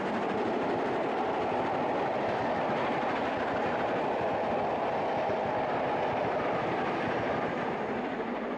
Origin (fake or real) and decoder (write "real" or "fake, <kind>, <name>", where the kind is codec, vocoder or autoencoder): real